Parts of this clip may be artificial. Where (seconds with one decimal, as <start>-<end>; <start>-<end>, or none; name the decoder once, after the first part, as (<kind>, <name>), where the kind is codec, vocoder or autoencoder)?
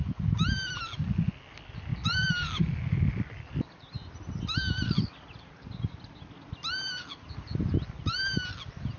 none